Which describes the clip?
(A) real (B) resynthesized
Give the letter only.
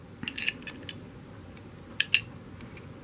A